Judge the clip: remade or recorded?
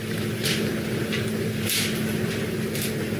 recorded